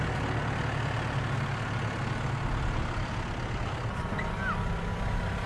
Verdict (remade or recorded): recorded